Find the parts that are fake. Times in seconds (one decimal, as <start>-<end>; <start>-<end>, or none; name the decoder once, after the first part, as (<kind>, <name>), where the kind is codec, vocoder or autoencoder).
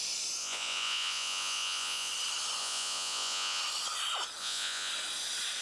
0.4-2.1 (vocoder, Vocos); 2.6-3.6; 4.4-4.9